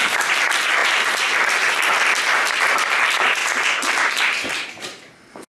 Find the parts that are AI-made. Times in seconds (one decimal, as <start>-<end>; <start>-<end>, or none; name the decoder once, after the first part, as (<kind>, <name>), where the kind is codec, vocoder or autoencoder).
0.0-5.5 (vocoder, BigVGAN v2)